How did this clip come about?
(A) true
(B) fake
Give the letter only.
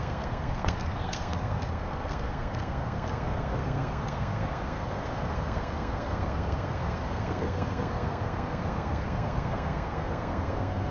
B